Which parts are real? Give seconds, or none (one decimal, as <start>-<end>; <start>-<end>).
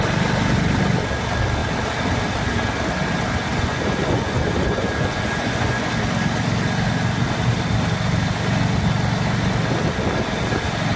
0.0-3.5; 5.9-11.0